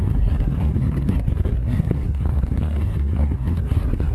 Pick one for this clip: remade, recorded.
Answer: remade